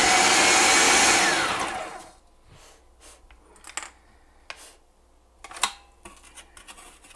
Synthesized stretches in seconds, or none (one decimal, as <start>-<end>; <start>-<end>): none